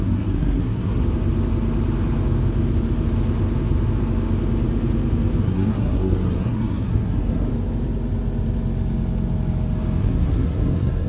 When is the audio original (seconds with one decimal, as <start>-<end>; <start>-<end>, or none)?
1.0-5.4; 7.5-10.0